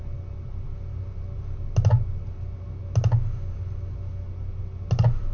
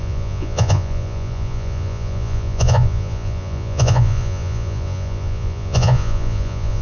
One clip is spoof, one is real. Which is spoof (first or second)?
second